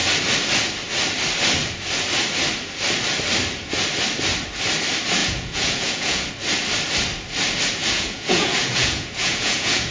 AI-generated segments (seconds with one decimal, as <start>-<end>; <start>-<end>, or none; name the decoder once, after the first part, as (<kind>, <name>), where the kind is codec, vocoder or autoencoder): 5.2-6.3 (vocoder, Vocos); 7.8-9.9